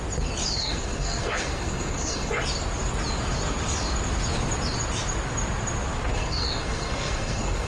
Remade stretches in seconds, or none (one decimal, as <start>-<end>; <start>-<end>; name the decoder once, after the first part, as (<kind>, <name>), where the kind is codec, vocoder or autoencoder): 0.6-2.3 (codec, SNAC); 6.1-7.7